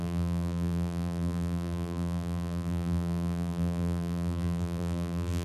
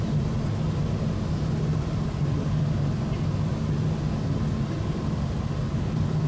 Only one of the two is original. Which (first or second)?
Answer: second